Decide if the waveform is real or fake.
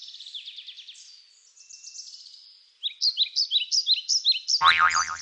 real